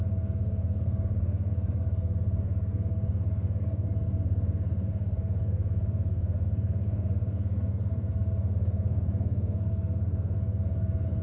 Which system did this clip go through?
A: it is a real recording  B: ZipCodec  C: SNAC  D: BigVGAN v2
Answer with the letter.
C